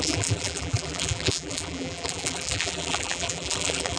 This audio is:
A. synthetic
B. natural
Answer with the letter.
A